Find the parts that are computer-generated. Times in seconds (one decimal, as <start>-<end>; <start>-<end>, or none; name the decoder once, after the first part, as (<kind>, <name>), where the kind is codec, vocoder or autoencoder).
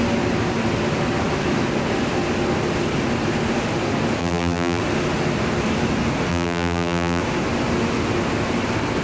4.2-4.8 (vocoder, BigVGAN v2); 6.3-7.2